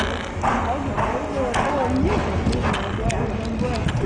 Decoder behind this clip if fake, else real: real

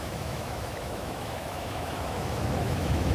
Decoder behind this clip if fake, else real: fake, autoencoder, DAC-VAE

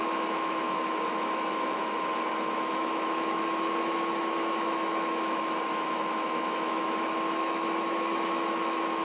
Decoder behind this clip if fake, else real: fake, autoencoder, DAC-VAE